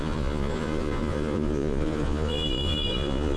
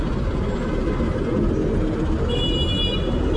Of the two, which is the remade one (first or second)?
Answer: first